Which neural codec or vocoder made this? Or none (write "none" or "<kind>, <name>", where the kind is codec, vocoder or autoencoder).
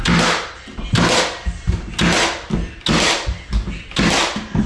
none